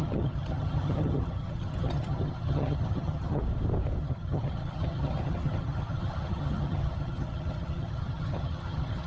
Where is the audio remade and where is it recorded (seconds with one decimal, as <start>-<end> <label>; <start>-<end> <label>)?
0.0-3.4 remade; 3.4-4.0 recorded; 4.0-9.1 remade